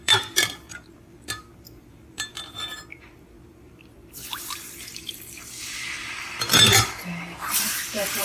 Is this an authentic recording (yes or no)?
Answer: no